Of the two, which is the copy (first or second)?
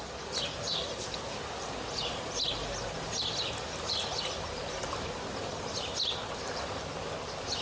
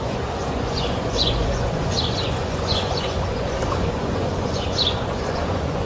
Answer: second